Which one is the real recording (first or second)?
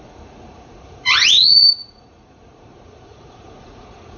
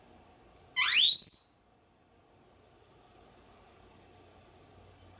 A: second